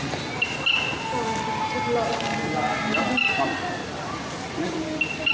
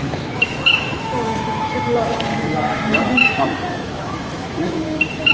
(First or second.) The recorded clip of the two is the first